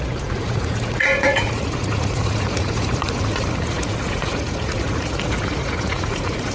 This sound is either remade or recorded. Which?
remade